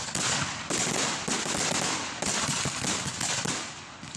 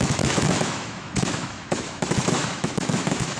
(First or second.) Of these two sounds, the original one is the first